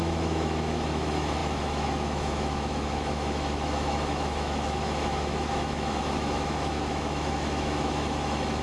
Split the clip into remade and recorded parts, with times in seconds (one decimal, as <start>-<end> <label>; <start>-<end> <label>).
0.0-8.6 remade